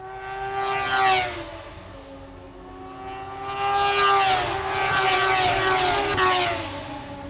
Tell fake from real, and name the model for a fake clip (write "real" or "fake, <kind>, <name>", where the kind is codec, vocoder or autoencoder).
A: real